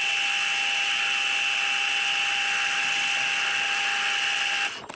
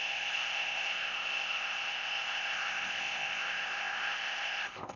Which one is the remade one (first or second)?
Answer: second